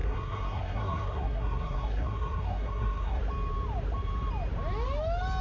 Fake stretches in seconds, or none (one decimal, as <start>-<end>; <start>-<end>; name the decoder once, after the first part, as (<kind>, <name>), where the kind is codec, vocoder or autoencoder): 0.0-3.2 (codec, SNAC)